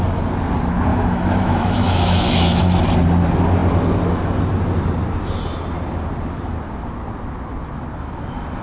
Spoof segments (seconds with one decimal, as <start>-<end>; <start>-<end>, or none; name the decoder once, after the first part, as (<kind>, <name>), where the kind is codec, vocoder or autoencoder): 0.9-2.8 (autoencoder, DAC-VAE)

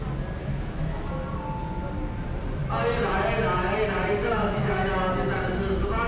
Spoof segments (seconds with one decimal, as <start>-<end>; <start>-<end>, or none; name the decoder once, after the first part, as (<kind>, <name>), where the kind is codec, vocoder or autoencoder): 0.4-1.1 (autoencoder, DAC-VAE); 4.2-4.9

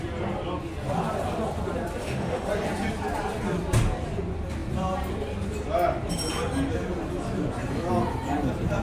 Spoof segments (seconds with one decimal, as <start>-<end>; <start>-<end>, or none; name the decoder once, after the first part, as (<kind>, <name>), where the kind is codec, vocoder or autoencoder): 2.0-2.5 (autoencoder, DAC-VAE)

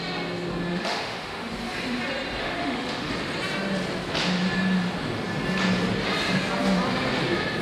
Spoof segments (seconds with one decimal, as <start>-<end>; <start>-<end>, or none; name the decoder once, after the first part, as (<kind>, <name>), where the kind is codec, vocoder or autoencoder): 0.7-1.5 (autoencoder, DAC-VAE); 2.4-3.1

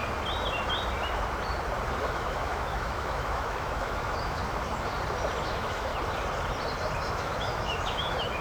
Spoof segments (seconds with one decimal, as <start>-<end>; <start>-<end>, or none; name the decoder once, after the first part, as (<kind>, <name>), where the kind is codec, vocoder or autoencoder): 2.0-4.4 (autoencoder, DAC-VAE); 5.4-5.9; 7.1-8.4

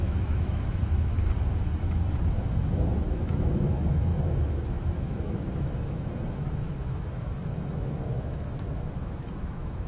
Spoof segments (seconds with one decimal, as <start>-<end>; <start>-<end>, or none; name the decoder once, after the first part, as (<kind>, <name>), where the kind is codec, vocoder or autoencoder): 0.0-1.1 (autoencoder, DAC-VAE); 2.3-9.9